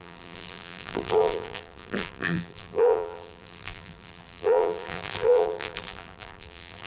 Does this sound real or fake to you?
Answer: fake